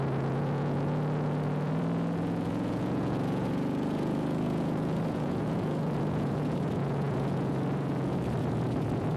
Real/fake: fake